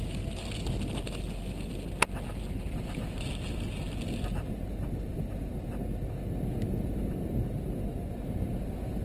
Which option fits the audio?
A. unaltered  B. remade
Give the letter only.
A